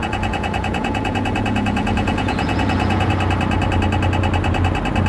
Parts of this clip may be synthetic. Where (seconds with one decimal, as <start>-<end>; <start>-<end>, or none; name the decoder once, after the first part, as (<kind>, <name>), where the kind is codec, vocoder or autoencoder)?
0.0-3.1 (vocoder, Vocos)